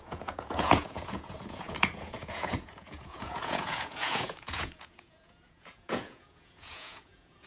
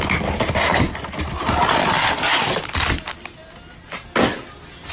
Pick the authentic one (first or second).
second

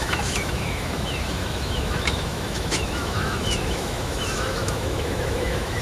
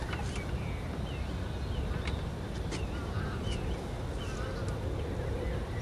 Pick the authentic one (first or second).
second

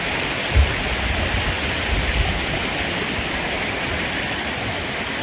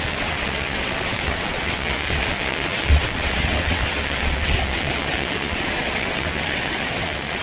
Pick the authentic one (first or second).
first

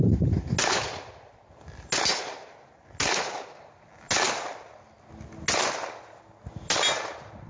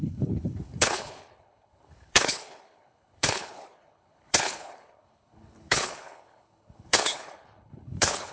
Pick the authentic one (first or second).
first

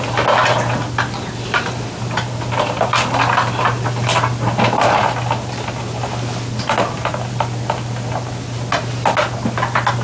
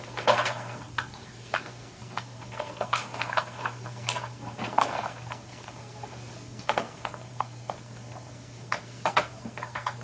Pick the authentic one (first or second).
first